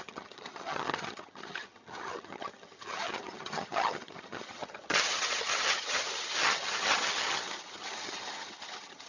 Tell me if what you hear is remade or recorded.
remade